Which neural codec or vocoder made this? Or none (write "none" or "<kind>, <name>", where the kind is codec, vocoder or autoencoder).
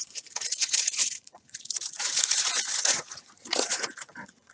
vocoder, Vocos